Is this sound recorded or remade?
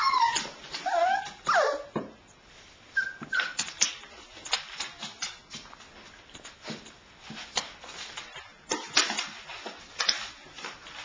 recorded